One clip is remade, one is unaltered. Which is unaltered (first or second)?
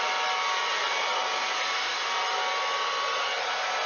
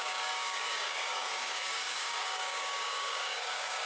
first